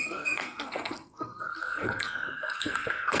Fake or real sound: fake